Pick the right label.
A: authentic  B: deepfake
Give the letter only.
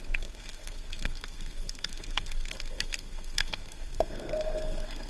B